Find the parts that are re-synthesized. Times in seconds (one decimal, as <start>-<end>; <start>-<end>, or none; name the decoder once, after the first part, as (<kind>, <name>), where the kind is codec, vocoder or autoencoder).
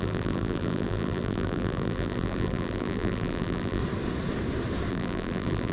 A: 0.0-3.8 (vocoder, BigVGAN v2); 4.9-5.7